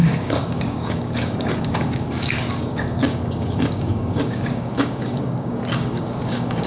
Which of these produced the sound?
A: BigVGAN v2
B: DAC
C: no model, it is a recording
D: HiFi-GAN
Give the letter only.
B